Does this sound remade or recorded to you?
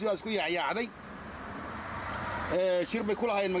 recorded